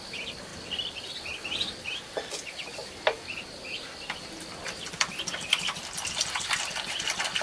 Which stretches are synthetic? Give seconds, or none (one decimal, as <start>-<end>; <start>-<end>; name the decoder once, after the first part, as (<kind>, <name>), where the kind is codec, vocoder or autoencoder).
0.0-0.5 (vocoder, BigVGAN v2); 4.9-5.8; 6.9-7.4